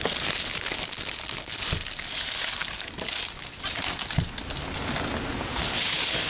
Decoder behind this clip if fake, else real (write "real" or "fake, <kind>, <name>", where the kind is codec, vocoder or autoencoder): real